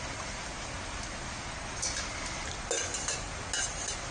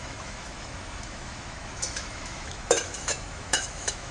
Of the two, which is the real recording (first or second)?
first